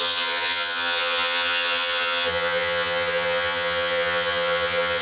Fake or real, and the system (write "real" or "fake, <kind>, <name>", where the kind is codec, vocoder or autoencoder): fake, vocoder, HiFi-GAN